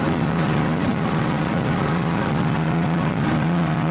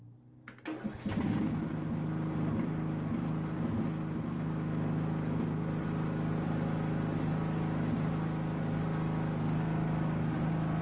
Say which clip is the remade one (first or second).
first